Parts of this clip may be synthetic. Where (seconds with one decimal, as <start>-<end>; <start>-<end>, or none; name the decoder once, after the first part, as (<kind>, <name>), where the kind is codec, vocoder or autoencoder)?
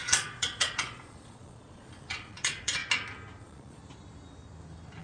0.0-2.8 (vocoder, Vocos); 3.4-3.8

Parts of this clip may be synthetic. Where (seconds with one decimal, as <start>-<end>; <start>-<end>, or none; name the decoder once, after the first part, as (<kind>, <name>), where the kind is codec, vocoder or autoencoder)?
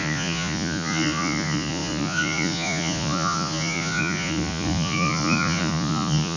0.0-6.4 (vocoder, Vocos)